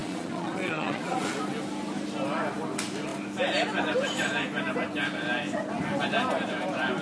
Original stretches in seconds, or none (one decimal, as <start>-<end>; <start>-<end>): 1.4-7.0